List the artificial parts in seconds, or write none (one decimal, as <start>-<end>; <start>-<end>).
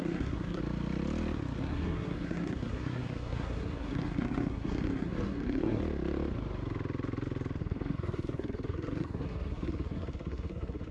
0.0-0.6; 1.6-5.8; 7.6-10.9